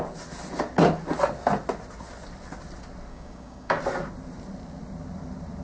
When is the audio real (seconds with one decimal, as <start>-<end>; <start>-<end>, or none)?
0.0-3.1; 3.8-5.6